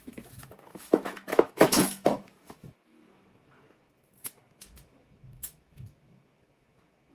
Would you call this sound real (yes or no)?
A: no